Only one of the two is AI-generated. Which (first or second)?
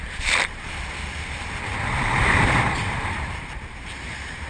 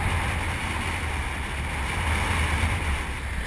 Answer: first